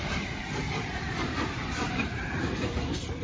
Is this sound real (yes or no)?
no